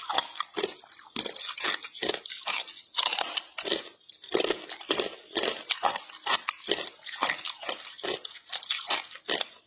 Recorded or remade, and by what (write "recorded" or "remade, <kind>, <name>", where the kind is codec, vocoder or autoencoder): recorded